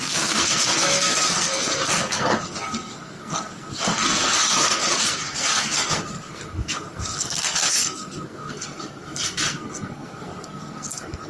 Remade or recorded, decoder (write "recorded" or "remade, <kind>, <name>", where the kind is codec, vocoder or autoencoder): remade, codec, SNAC